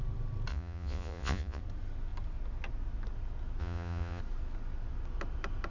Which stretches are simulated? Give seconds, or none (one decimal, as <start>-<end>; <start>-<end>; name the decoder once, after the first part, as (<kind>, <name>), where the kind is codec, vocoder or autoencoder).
0.5-1.6 (vocoder, Vocos); 3.6-4.2